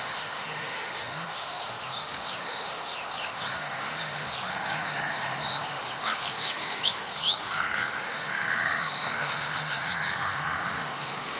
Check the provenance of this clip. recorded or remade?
remade